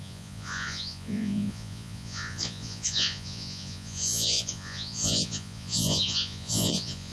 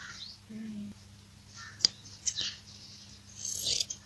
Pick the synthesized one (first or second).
first